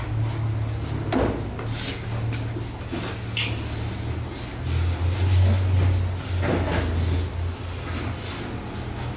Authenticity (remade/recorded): recorded